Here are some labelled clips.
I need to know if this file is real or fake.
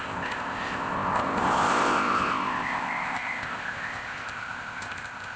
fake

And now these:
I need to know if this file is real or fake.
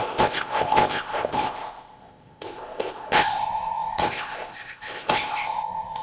fake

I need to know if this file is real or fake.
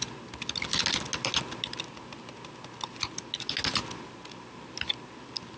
real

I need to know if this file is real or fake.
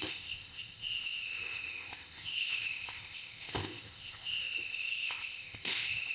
fake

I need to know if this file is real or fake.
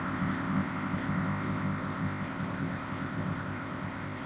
fake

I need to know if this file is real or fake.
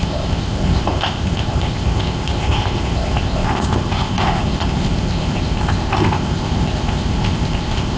fake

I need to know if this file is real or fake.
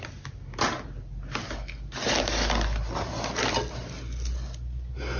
real